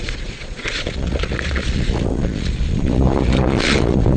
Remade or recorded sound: remade